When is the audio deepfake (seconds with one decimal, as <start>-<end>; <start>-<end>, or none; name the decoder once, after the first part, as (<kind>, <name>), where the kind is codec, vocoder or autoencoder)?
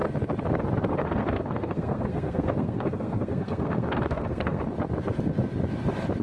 0.9-4.6 (codec, SNAC)